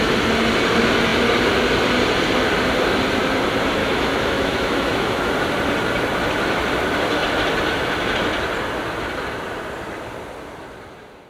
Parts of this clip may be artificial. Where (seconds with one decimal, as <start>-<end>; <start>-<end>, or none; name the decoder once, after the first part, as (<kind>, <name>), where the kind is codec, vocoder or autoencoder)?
3.8-5.3 (autoencoder, DAC-VAE)